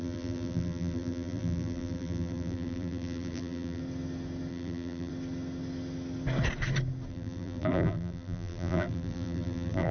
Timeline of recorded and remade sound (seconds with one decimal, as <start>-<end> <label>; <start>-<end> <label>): 0.0-3.8 remade; 3.8-4.5 recorded; 4.5-5.1 remade; 5.1-7.1 recorded; 7.1-9.9 remade